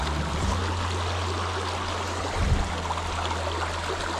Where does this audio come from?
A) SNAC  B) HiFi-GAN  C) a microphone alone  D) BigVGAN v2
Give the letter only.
C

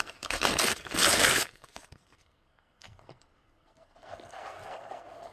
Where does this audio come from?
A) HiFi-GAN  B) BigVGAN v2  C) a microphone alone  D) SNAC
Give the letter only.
D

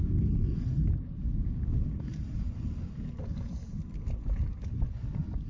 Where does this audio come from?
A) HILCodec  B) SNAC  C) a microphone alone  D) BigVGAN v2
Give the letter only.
C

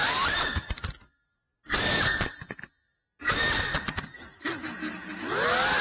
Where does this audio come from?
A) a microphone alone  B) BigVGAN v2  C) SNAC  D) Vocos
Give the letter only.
A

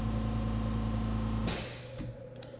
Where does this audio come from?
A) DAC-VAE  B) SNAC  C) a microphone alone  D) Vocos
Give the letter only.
C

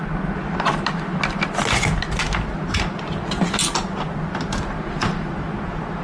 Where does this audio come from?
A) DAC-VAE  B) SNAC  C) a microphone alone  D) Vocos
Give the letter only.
C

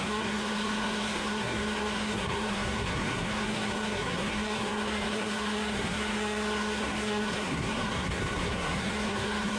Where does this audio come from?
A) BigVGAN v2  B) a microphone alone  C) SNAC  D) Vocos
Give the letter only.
C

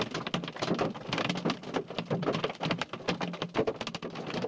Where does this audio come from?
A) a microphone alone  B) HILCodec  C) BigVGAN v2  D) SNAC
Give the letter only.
A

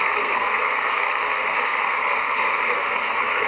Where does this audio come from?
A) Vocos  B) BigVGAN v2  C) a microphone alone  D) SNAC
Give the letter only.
D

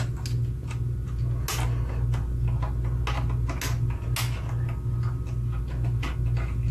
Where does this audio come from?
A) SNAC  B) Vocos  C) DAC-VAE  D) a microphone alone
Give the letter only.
D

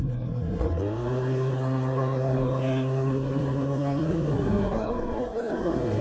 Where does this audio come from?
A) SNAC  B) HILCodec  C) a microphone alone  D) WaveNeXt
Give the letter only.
A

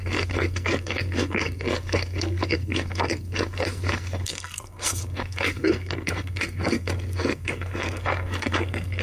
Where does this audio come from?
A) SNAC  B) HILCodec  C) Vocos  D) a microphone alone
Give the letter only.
A